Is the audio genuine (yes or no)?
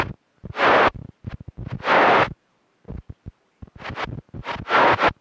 yes